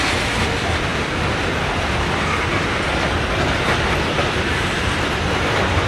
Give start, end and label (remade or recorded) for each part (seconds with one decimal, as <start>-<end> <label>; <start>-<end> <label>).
0.0-5.9 recorded